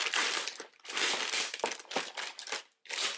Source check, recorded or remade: remade